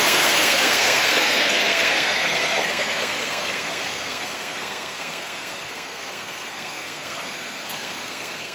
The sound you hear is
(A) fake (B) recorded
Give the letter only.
A